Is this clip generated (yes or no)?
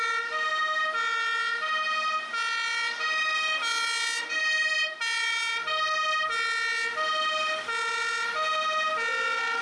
no